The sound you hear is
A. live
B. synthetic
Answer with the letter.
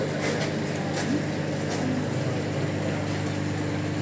A